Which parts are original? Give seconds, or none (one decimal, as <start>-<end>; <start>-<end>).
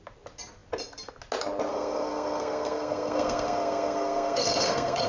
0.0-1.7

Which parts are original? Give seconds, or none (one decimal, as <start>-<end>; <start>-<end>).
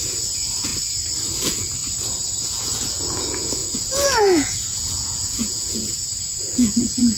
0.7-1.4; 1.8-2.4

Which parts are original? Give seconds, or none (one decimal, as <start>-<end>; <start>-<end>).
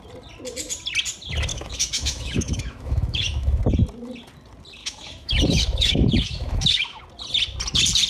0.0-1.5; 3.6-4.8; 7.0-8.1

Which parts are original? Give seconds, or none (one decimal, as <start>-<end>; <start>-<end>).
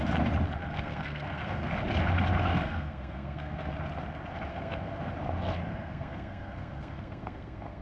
0.0-0.6; 1.7-2.5; 3.7-4.5; 5.1-5.7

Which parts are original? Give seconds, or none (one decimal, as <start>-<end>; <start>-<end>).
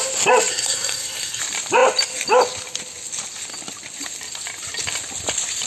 0.0-0.5; 1.4-5.7